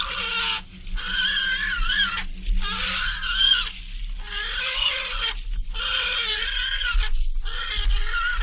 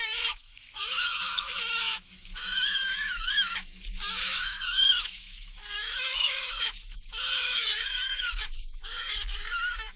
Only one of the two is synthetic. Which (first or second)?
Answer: second